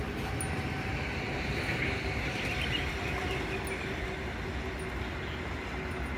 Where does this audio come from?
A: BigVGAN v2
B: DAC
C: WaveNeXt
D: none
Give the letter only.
D